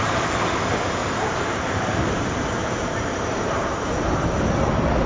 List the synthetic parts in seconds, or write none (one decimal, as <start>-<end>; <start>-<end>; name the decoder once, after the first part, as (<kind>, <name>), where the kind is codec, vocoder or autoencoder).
1.0-4.1 (vocoder, BigVGAN v2)